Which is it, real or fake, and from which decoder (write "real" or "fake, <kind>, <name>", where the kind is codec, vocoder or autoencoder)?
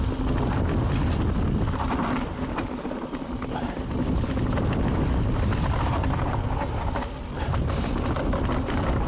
real